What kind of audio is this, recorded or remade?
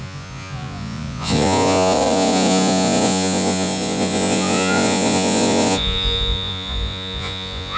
remade